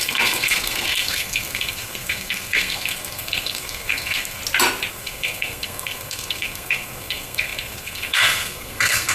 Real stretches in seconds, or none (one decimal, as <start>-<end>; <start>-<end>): 4.4-4.9